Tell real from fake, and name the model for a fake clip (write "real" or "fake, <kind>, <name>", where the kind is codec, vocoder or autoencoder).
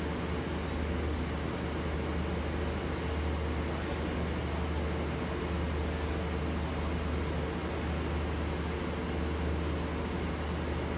real